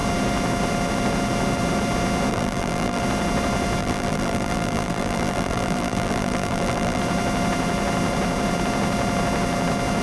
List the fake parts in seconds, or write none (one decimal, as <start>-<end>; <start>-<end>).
2.3-3.0; 3.8-7.0